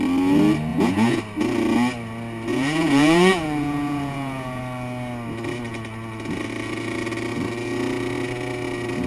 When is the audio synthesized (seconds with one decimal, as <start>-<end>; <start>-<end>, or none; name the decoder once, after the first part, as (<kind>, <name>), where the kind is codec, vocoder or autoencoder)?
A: 0.7-1.2 (vocoder, Vocos); 2.5-4.6